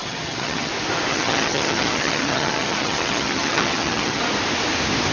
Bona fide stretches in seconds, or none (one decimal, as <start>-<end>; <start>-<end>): 0.7-1.1; 4.2-5.1